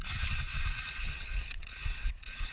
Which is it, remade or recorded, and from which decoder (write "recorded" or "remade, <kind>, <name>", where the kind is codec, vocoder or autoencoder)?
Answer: remade, vocoder, WaveNeXt